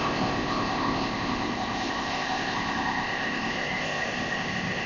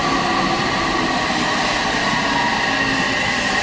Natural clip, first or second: second